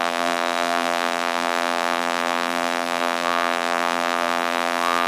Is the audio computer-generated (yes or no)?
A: yes